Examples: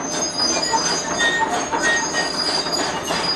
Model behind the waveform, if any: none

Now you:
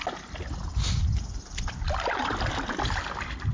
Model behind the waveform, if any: none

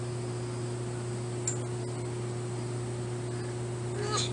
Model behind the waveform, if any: none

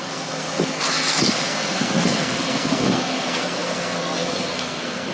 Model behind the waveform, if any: codec, SNAC